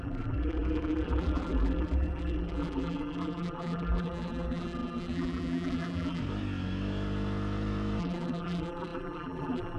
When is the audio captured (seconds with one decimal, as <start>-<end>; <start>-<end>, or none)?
6.2-8.0